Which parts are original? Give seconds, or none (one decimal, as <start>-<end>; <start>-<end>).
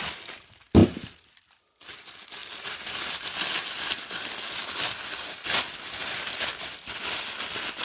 0.0-7.8